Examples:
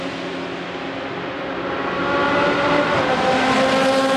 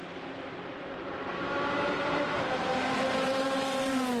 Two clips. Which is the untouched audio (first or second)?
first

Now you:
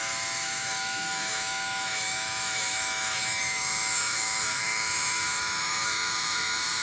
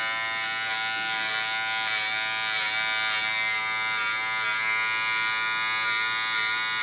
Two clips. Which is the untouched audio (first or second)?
second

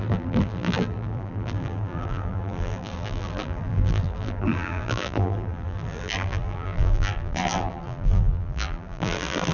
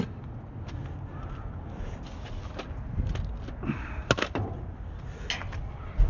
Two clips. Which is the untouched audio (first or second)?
second